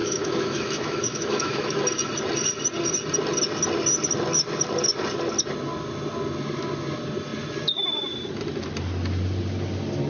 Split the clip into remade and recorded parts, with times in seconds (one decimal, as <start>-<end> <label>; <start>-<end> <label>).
0.0-1.8 remade; 1.8-10.1 recorded